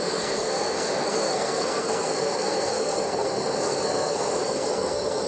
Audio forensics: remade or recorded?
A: remade